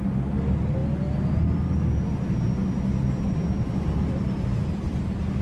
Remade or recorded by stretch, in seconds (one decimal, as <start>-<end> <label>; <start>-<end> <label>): 0.0-5.4 recorded